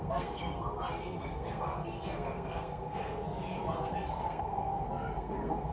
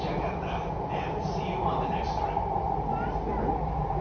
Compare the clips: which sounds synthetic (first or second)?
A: first